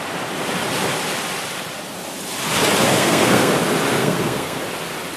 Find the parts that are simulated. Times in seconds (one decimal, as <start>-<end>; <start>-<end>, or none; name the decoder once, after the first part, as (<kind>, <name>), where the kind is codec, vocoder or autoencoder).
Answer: 2.8-3.5 (codec, SNAC); 4.0-4.6